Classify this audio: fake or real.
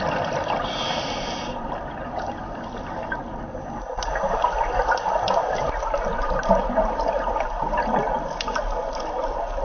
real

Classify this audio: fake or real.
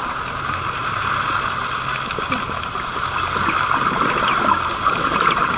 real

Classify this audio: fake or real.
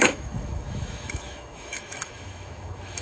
fake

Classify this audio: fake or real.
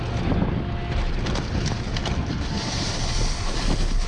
real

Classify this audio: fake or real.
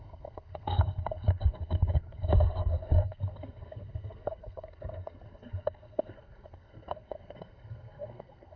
fake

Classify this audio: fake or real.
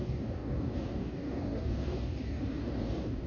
fake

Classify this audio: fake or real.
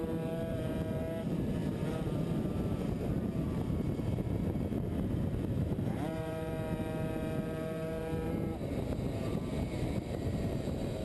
fake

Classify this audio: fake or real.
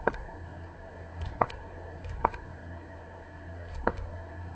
fake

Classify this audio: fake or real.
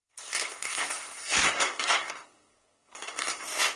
fake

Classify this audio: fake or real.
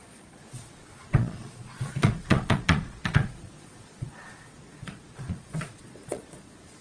fake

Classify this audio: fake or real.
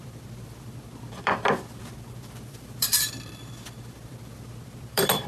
fake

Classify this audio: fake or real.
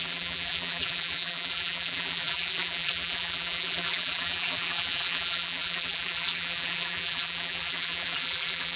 fake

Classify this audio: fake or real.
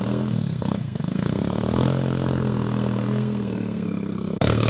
fake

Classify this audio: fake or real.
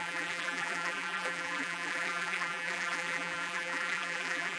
fake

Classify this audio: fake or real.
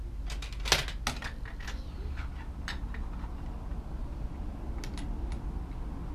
real